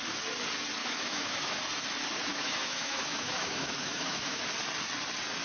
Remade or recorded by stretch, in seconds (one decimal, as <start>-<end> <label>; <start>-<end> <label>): 0.0-0.8 recorded; 0.8-1.6 remade; 1.6-2.3 recorded; 2.3-4.4 remade; 4.4-5.4 recorded